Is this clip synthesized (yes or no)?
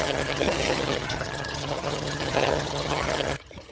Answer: yes